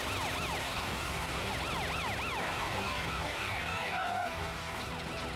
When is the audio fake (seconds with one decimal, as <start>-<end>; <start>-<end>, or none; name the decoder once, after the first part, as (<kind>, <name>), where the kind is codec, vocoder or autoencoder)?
0.6-1.5 (codec, DAC); 2.4-4.8